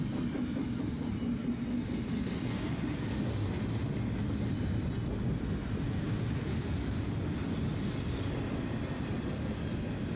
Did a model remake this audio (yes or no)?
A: no